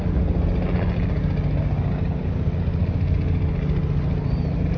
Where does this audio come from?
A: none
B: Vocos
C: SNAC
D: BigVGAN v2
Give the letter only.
A